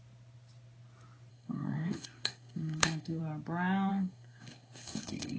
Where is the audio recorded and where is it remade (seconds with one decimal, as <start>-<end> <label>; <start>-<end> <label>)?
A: 0.0-1.3 recorded; 1.3-3.2 remade; 3.2-3.9 recorded; 3.9-5.4 remade